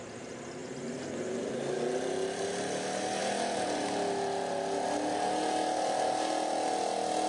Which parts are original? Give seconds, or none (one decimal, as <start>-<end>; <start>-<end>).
0.0-7.3